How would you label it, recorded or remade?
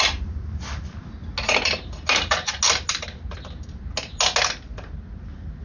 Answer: recorded